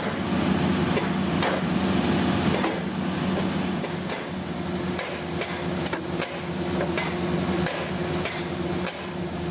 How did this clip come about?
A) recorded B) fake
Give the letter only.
A